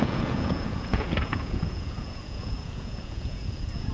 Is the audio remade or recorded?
remade